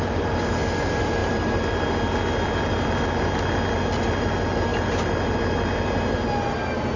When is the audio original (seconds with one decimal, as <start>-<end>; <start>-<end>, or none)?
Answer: 0.0-7.0